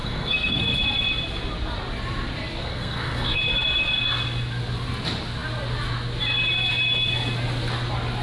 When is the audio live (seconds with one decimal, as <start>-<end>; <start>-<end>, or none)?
0.6-2.6; 3.4-8.2